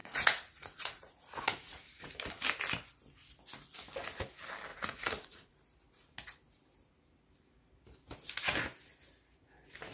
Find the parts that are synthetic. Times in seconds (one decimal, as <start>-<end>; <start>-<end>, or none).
0.0-2.3; 4.7-5.6